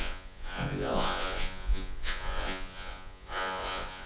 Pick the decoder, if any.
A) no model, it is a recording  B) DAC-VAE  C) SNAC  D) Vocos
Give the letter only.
D